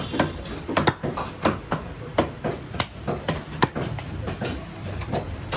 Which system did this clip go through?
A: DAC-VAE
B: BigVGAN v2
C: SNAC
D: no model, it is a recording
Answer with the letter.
B